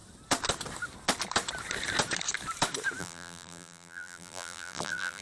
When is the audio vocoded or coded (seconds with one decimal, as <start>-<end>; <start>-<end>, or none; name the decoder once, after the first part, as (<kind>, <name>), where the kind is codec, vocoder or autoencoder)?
3.0-5.2 (vocoder, BigVGAN v2)